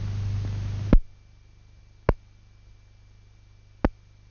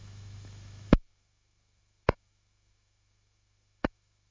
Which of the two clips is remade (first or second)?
second